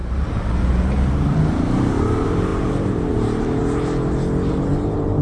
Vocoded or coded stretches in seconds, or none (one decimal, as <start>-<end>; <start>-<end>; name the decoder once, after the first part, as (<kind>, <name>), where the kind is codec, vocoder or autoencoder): 0.0-3.6 (vocoder, BigVGAN v2); 4.5-5.2